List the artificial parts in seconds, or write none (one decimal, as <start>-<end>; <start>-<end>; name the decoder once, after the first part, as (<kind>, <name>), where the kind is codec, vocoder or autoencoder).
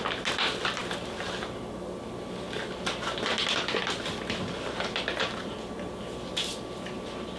none